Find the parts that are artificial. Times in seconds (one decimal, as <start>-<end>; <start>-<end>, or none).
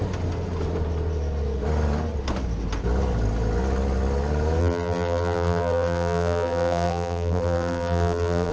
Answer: 4.6-8.5